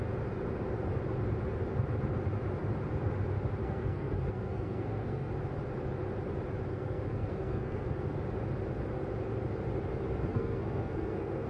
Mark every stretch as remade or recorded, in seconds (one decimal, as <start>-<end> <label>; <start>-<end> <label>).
0.0-3.6 recorded; 3.6-5.3 remade; 5.3-6.7 recorded; 6.7-8.2 remade; 8.2-10.3 recorded; 10.3-11.5 remade